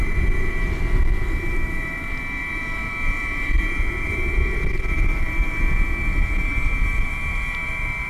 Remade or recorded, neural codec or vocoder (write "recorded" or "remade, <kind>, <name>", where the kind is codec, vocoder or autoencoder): remade, vocoder, BigVGAN v2